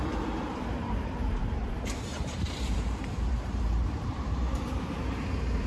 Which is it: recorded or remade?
remade